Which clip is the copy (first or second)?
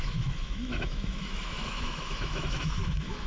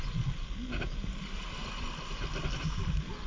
first